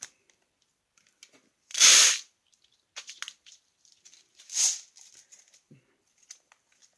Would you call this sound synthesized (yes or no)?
no